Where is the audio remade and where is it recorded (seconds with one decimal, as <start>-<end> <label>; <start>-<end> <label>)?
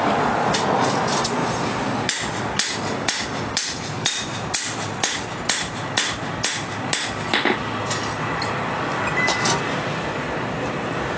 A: 0.0-11.2 recorded